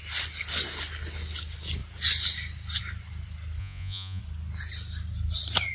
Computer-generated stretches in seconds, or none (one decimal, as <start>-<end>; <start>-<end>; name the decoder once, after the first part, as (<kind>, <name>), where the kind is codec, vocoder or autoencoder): 3.6-4.2 (vocoder, Vocos)